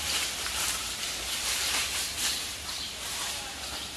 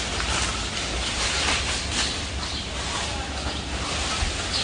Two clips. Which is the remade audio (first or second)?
first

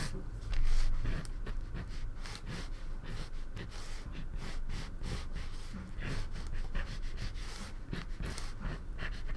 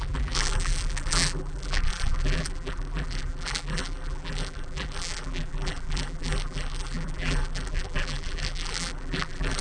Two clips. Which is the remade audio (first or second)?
second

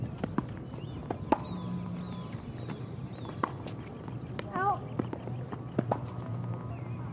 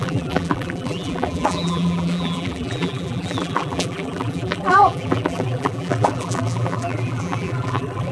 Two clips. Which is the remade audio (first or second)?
second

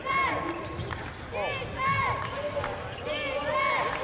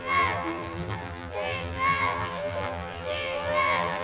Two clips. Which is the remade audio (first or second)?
second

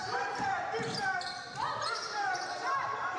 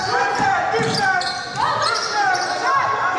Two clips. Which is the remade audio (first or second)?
first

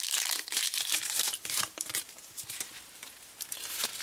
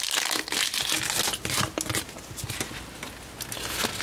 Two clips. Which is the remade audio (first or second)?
first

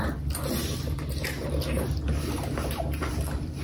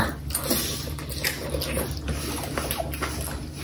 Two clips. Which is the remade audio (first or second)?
first